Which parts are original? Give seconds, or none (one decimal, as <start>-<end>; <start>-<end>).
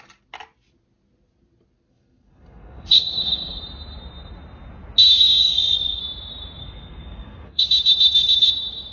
0.0-1.9; 3.6-5.4; 6.0-6.6; 7.6-8.9